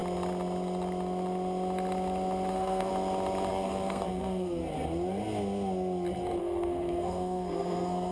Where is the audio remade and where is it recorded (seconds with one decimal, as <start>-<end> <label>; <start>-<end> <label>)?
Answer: 0.0-2.5 recorded; 2.5-2.9 remade; 2.9-3.5 recorded; 3.5-4.6 remade; 4.6-6.4 recorded; 6.4-8.1 remade

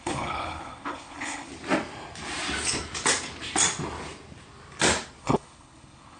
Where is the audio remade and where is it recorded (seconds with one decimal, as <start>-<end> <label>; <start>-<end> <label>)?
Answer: 0.0-1.5 remade; 1.5-5.2 recorded; 5.2-6.2 remade

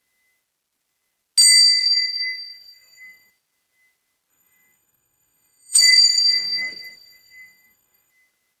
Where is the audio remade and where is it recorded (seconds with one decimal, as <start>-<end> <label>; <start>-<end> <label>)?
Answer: 0.0-1.8 recorded; 1.8-3.3 remade; 3.3-4.3 recorded; 4.3-8.1 remade; 8.1-8.6 recorded

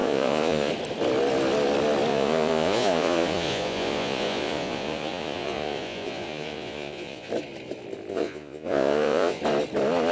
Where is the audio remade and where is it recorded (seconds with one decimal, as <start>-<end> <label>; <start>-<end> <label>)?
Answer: 0.0-0.7 remade; 0.7-2.1 recorded; 2.1-7.3 remade; 7.3-8.1 recorded; 8.1-9.4 remade; 9.4-10.1 recorded

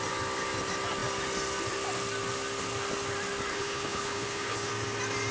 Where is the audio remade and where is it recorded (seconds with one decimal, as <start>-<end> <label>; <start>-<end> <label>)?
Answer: 0.0-3.5 recorded; 3.5-4.7 remade; 4.7-5.3 recorded